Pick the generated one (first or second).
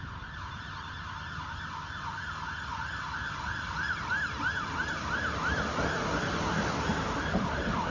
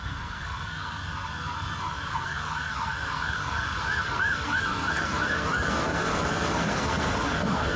second